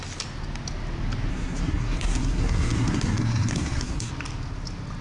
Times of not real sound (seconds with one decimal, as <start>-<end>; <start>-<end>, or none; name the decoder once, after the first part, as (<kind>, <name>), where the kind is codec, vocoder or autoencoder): 1.3-4.1 (codec, SNAC)